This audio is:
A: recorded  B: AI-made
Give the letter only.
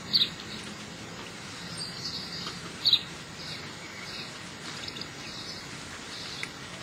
A